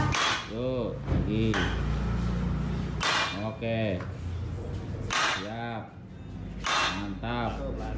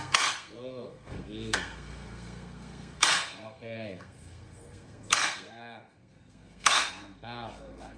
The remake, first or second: second